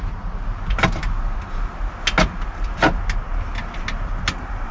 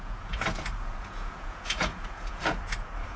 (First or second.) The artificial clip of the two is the second